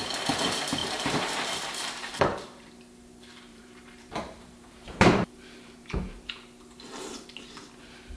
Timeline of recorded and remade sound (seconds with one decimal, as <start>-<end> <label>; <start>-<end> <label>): 0.0-0.8 recorded; 0.8-2.8 remade; 2.8-3.5 recorded; 3.5-6.3 remade; 6.3-8.2 recorded